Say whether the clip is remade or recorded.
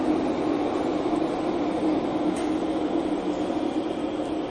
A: recorded